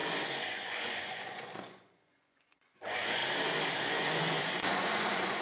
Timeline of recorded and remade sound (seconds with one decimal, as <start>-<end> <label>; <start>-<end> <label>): 0.0-3.2 remade; 3.2-3.8 recorded; 3.8-5.4 remade